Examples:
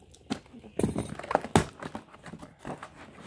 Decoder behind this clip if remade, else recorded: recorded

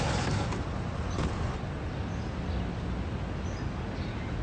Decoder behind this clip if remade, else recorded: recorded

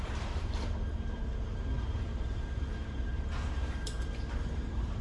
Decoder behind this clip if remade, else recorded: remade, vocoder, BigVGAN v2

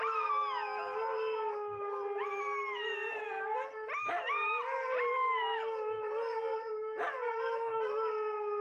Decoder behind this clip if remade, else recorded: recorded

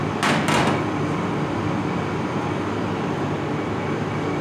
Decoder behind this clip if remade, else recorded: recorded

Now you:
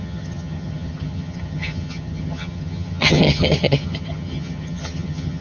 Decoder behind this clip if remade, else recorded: remade, vocoder, HiFi-GAN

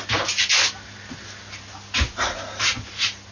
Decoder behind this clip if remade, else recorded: recorded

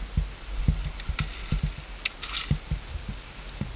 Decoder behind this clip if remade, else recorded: recorded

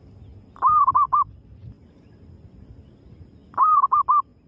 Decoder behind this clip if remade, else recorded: recorded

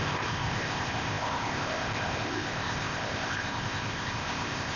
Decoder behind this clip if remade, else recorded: remade, codec, ZipCodec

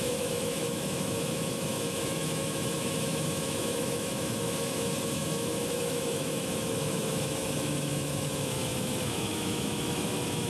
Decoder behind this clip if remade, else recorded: remade, autoencoder, DAC-VAE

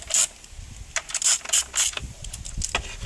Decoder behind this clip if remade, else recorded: recorded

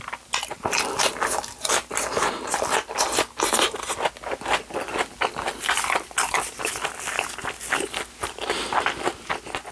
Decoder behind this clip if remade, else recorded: recorded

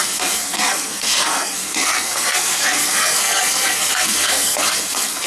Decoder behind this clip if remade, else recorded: remade, codec, SNAC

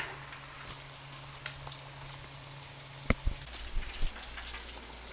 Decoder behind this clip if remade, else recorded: recorded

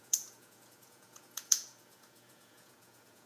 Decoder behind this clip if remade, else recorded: remade, vocoder, Vocos